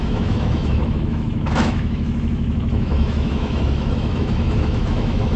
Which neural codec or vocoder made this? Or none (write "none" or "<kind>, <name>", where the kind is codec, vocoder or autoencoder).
autoencoder, DAC-VAE